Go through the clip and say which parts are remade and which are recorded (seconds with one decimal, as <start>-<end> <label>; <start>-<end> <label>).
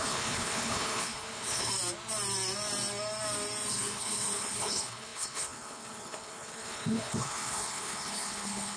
0.0-1.7 remade; 1.7-3.7 recorded; 3.7-8.8 remade